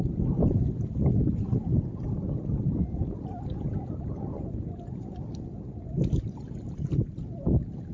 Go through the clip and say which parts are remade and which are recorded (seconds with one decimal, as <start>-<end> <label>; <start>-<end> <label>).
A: 0.0-7.9 recorded